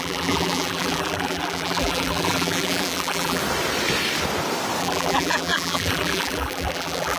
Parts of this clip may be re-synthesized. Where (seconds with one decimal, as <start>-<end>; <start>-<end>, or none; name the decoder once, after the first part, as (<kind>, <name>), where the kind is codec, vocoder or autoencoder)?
0.0-3.4 (vocoder, BigVGAN v2); 4.8-7.2